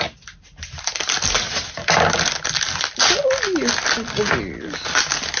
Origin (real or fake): real